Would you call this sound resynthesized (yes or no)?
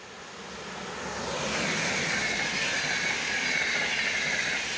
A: no